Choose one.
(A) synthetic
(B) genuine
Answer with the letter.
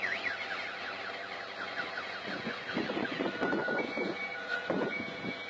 A